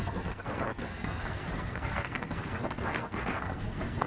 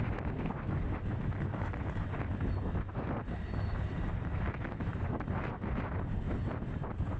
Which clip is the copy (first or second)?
first